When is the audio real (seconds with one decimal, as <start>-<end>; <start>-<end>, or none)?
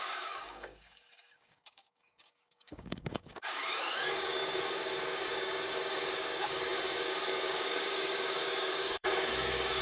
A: none